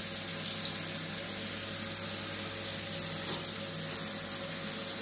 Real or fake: real